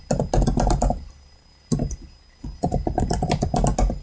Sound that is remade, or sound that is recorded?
recorded